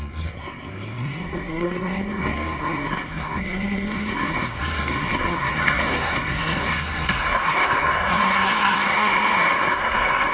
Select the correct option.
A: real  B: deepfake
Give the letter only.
B